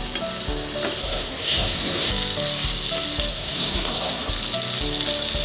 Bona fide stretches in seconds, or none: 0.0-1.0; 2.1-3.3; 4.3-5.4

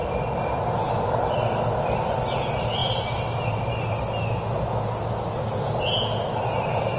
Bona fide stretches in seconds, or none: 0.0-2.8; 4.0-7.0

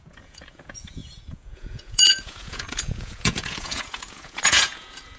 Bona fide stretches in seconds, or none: none

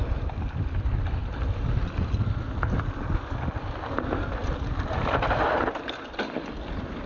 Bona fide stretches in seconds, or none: 0.0-7.1

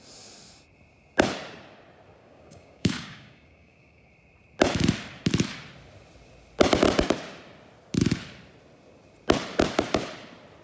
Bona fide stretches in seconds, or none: 0.0-2.2; 4.1-10.6

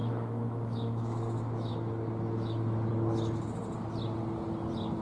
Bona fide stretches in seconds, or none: 2.9-5.0